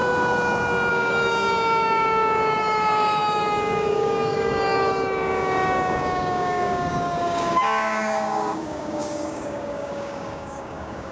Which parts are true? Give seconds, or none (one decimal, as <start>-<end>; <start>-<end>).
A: 0.0-0.9